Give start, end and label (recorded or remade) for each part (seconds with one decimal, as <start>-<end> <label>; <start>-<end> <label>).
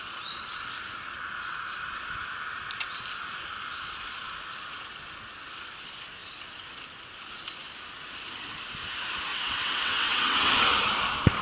0.0-9.3 recorded; 9.3-10.5 remade; 10.5-11.4 recorded